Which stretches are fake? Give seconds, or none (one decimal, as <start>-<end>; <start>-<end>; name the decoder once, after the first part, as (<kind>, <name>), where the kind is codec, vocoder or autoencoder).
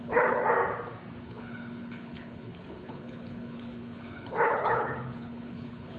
0.0-0.4 (codec, HILCodec); 1.2-6.0